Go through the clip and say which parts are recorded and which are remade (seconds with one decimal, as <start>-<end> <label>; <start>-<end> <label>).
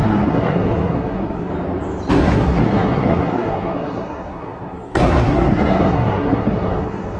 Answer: 0.0-1.5 remade; 1.5-2.1 recorded; 2.1-7.2 remade